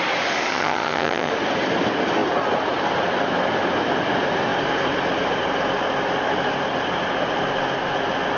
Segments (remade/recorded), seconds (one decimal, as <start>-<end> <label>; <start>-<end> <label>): 0.0-0.5 recorded; 0.5-1.3 remade; 1.3-8.4 recorded